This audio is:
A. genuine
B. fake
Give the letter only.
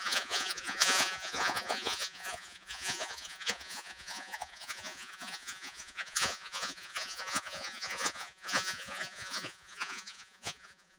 B